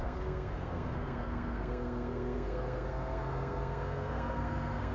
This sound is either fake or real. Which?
fake